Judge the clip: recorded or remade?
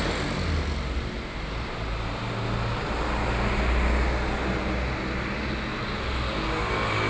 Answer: recorded